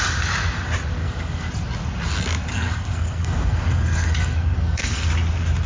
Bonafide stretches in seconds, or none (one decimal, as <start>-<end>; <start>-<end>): 0.0-1.0; 1.5-2.5; 5.1-5.7